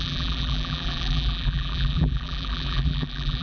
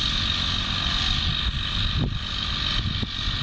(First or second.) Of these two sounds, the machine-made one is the first